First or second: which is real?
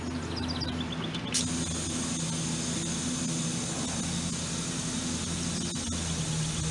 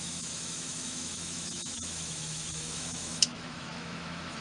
first